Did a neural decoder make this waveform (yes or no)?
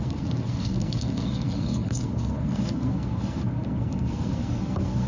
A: yes